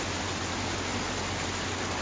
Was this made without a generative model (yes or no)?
yes